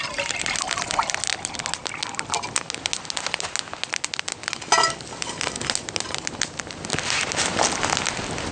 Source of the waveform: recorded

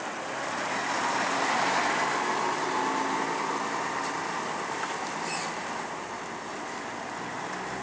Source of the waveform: recorded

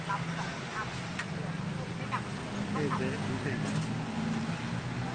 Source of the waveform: recorded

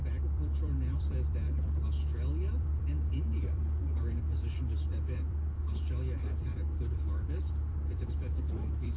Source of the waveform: remade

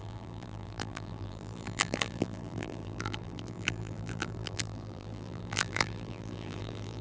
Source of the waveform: remade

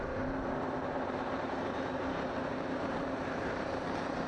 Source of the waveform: remade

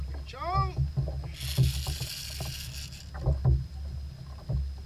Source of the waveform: recorded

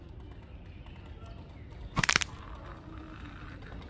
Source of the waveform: recorded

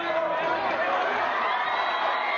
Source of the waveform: recorded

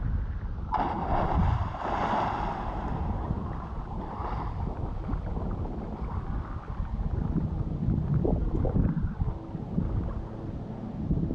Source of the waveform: recorded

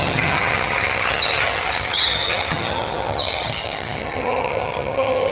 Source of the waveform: remade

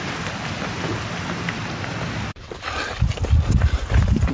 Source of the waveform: recorded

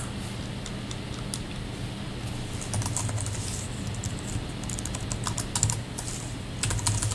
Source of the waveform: recorded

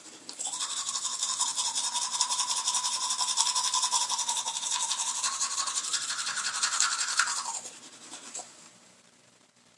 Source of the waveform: remade